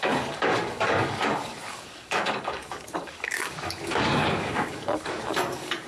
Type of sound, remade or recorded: remade